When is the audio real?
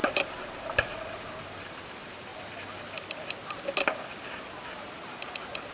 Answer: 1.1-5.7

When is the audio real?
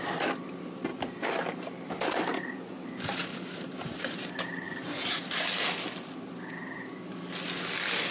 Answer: 0.0-0.9; 1.7-3.3; 5.2-8.1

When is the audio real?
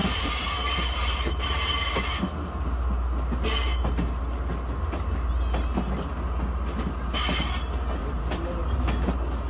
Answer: 2.0-8.0; 8.8-9.5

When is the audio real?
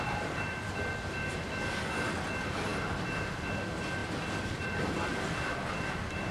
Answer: 0.0-2.7; 3.6-5.1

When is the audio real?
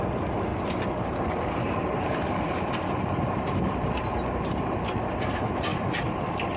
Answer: 0.5-1.5; 4.1-5.2; 5.7-6.6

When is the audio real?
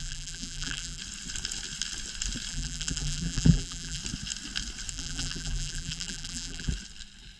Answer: 1.0-2.5; 4.0-4.9; 6.7-7.4